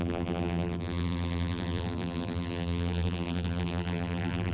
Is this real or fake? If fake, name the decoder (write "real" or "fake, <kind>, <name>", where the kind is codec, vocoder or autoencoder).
fake, vocoder, BigVGAN v2